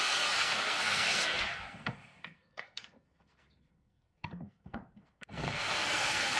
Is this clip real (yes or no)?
no